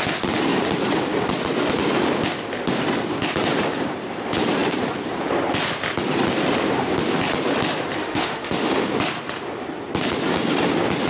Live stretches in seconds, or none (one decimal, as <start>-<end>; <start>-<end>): 0.0-8.0; 8.7-11.1